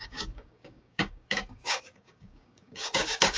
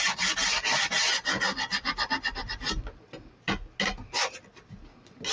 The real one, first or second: second